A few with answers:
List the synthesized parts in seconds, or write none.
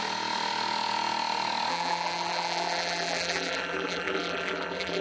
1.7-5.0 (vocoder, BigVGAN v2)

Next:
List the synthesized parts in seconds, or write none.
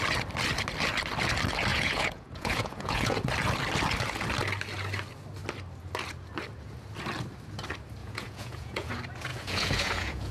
1.7-3.2 (vocoder, Vocos); 8.0-8.9; 9.3-10.3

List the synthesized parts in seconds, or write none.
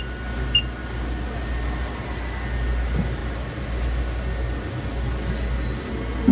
none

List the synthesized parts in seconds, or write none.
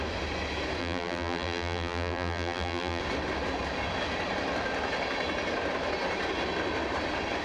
0.8-3.0 (vocoder, BigVGAN v2)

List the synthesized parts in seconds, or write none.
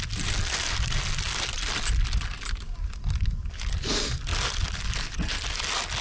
none